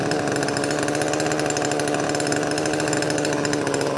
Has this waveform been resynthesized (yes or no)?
no